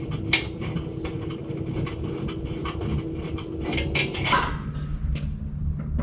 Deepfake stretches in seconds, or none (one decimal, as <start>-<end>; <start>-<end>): none